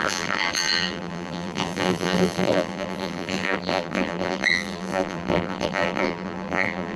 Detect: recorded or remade remade